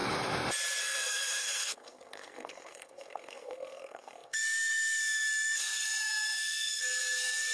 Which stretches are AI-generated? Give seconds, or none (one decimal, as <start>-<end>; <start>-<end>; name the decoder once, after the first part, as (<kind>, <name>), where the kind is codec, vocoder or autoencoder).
0.8-7.5 (codec, SNAC)